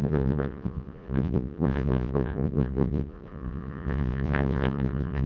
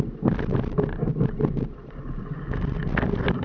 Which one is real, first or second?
second